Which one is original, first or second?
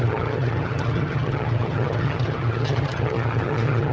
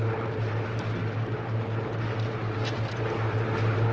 second